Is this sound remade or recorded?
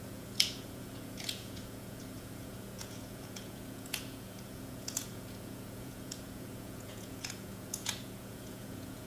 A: remade